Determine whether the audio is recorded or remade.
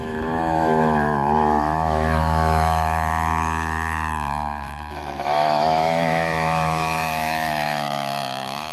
remade